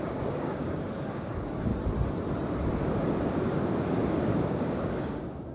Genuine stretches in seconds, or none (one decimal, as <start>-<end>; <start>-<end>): 1.7-2.7